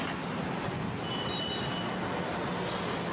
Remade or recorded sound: recorded